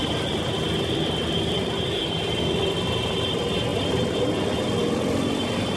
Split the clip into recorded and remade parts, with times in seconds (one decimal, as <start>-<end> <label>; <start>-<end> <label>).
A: 0.0-5.8 recorded